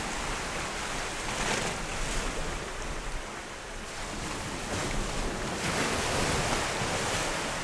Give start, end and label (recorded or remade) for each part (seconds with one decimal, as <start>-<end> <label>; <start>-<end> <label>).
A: 0.0-7.6 recorded